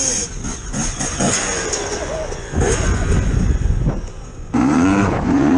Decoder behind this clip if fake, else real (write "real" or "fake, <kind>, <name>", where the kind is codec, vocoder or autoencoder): fake, vocoder, Vocos